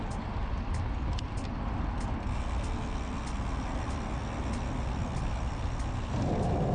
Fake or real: real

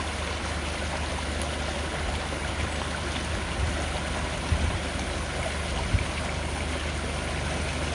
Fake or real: real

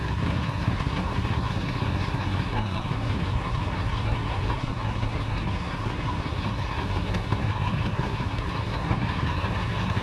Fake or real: fake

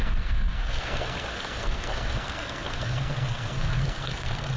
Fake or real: fake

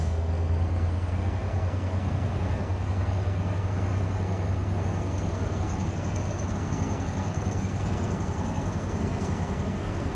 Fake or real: fake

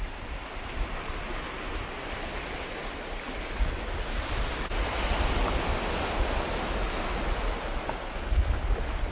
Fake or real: real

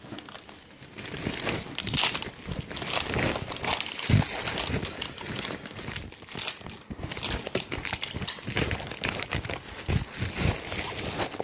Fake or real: real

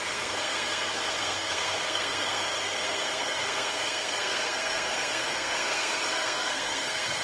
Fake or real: fake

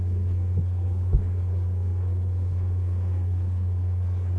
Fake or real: fake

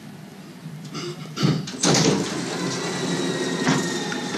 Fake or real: real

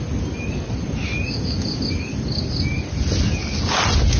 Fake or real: real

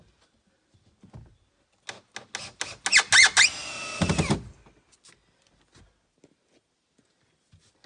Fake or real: real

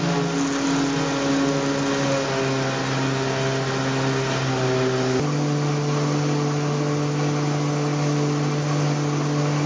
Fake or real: real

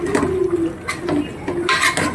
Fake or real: real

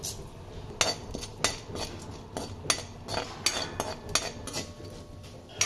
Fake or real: real